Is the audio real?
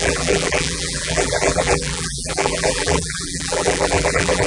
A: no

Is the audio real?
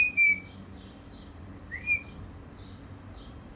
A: yes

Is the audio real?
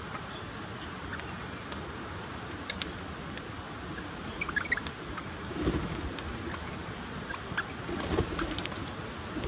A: yes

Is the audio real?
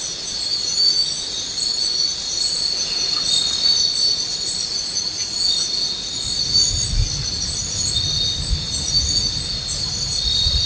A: yes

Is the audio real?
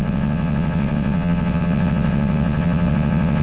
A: no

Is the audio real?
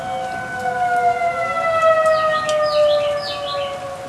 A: yes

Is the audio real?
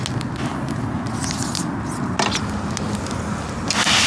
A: yes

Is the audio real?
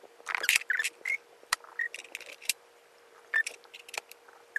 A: yes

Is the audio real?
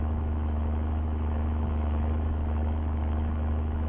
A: no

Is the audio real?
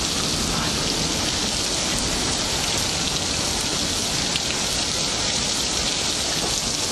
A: yes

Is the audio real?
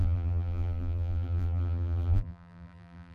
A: no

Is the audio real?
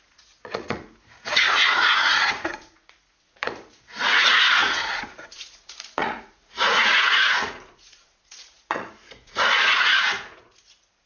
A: no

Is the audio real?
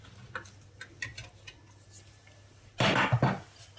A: yes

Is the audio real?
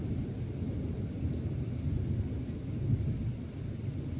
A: yes